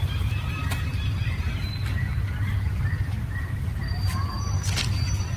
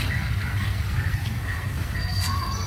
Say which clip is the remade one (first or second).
second